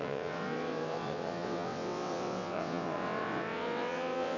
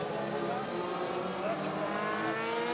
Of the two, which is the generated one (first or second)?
first